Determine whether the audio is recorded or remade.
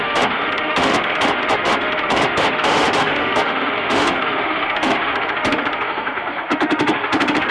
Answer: remade